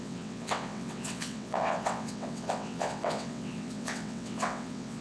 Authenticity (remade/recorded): remade